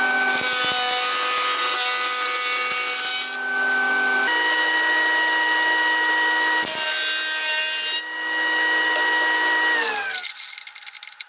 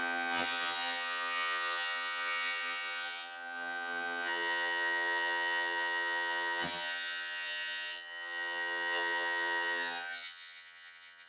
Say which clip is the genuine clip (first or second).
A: first